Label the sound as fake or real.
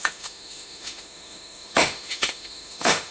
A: fake